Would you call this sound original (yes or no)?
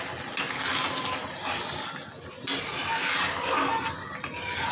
yes